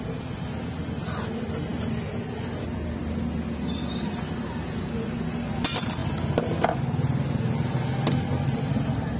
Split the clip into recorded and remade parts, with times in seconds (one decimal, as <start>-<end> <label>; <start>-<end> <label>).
0.0-9.2 recorded